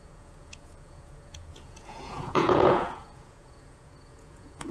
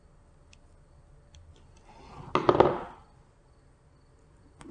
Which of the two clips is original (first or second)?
second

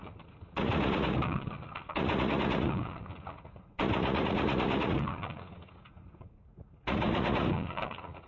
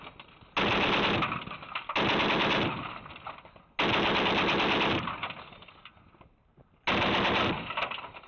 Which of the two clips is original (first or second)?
second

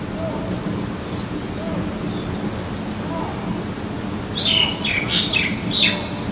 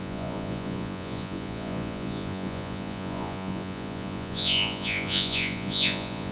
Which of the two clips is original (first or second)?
first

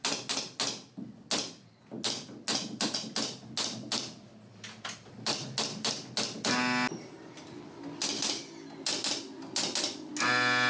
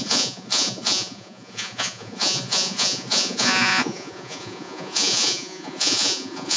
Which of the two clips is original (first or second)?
first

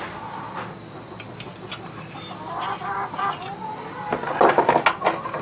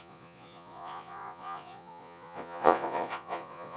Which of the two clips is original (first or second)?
first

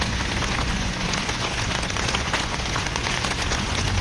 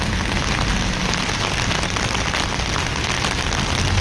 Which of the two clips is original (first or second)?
second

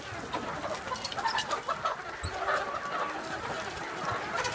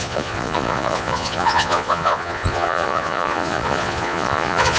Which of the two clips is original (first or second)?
first